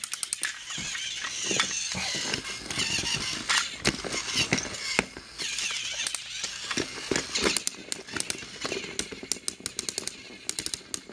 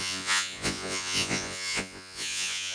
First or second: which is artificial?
second